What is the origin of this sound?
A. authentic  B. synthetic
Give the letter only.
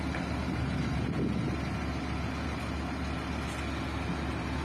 A